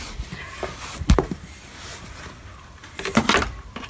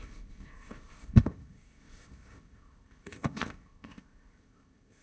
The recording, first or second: first